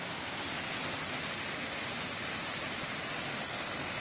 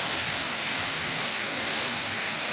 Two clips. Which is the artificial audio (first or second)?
second